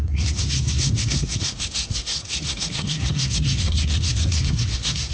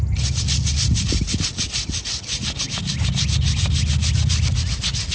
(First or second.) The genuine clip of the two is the second